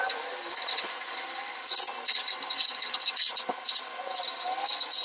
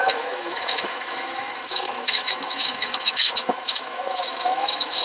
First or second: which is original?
first